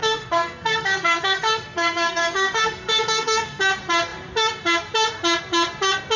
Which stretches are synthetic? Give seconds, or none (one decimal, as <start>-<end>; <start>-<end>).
0.0-3.6